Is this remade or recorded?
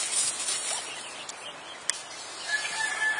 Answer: recorded